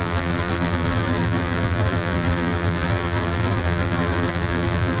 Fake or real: fake